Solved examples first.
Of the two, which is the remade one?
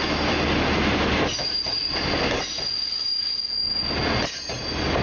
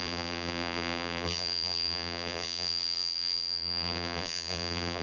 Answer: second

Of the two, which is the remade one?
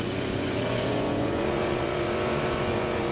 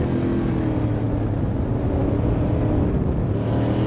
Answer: first